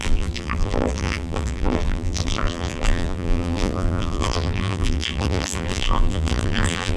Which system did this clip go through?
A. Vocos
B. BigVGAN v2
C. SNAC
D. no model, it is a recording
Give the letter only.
B